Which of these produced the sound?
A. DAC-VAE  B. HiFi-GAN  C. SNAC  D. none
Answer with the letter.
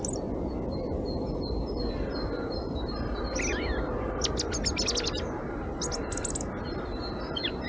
D